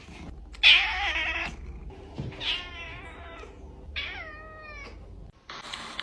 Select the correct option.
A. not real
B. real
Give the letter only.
B